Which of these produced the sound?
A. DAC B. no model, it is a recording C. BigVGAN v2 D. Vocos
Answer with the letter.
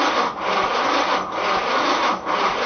B